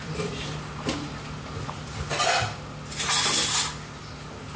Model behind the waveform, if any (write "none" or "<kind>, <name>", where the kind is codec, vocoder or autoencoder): none